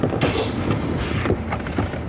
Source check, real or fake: real